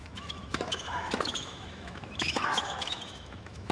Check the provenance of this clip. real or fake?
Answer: fake